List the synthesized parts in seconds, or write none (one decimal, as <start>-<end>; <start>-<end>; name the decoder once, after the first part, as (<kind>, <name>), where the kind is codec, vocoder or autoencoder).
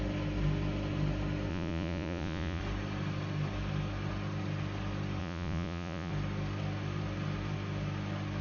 1.5-2.6 (vocoder, Vocos); 5.2-6.1